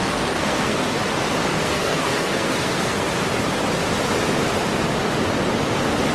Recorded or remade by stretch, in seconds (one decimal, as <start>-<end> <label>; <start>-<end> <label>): 0.0-1.0 remade; 1.0-1.5 recorded; 1.5-3.1 remade; 3.1-6.1 recorded